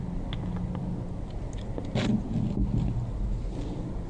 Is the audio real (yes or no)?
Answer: yes